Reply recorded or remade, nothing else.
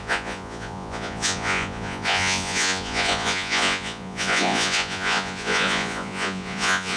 remade